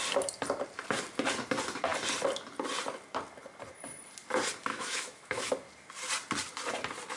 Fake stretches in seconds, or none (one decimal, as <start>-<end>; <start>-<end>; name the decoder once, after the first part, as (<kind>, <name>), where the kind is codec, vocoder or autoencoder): 4.7-5.5 (autoencoder, DAC-VAE)